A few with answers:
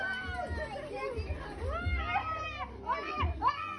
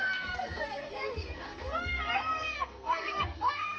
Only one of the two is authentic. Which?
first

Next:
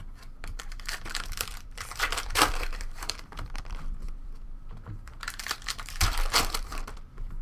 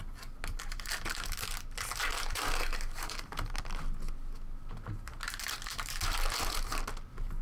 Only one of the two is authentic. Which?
second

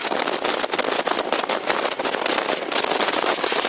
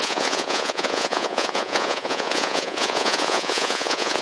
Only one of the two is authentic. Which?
first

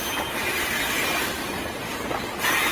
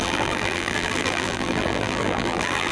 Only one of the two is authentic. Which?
first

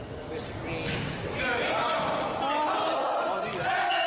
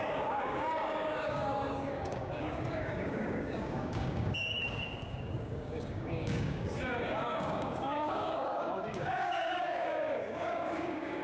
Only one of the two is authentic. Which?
first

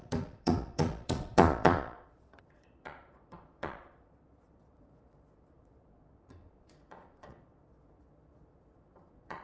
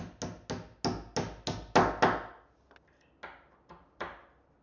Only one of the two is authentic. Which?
second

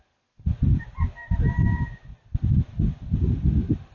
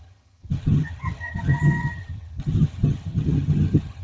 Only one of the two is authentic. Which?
first